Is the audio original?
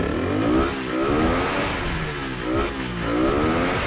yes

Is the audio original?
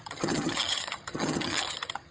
no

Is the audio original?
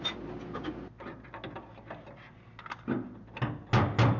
yes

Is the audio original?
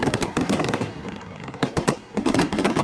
no